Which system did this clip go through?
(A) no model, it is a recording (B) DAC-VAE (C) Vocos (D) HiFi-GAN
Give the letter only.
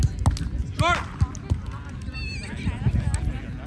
A